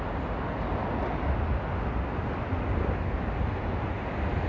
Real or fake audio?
real